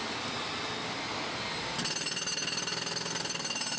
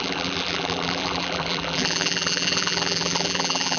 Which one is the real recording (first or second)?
first